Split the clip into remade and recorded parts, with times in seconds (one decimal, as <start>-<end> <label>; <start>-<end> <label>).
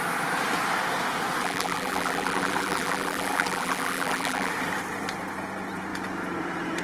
0.0-1.4 recorded; 1.4-4.5 remade; 4.5-6.8 recorded